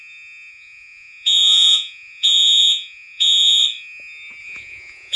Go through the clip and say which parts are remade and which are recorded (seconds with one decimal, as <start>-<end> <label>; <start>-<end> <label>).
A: 0.0-0.5 recorded; 0.5-3.6 remade; 3.6-4.4 recorded; 4.4-5.2 remade